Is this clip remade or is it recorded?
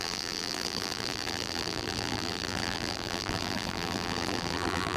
remade